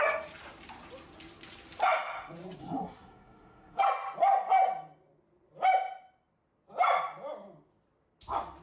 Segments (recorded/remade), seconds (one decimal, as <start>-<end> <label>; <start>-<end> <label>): 0.0-2.6 recorded; 2.6-3.8 remade; 3.8-8.6 recorded